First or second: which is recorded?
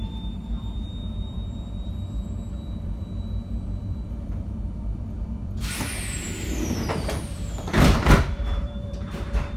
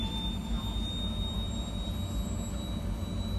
second